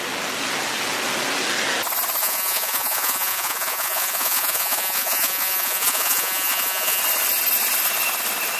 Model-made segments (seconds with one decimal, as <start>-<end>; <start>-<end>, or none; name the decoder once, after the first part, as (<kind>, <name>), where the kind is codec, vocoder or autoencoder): 2.2-7.0 (vocoder, Vocos)